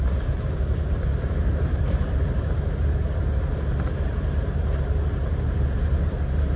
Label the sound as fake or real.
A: fake